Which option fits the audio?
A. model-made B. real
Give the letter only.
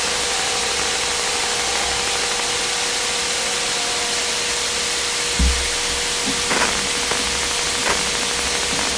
B